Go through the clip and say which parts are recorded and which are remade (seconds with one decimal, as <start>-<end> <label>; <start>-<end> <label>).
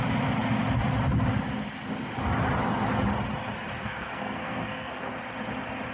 0.0-3.8 recorded; 3.8-5.1 remade; 5.1-5.9 recorded